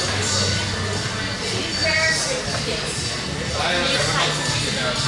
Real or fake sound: real